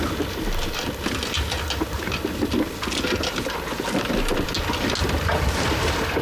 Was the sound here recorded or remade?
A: recorded